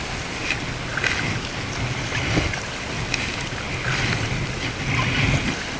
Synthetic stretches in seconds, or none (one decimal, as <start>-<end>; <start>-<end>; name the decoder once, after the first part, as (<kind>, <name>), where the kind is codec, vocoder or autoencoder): none